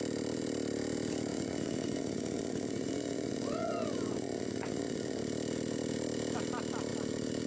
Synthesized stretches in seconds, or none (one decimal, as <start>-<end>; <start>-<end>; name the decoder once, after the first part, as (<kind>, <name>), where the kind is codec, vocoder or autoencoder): 1.3-5.2 (vocoder, Vocos)